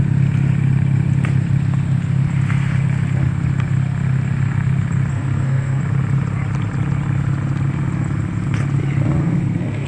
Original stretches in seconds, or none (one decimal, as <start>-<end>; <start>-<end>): 0.0-5.1; 5.8-9.2